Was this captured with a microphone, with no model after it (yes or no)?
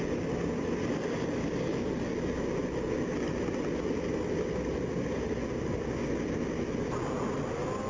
yes